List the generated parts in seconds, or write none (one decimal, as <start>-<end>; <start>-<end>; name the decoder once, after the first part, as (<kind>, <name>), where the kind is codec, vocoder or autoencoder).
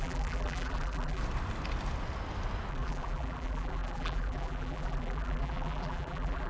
0.0-1.2 (vocoder, BigVGAN v2); 2.7-6.5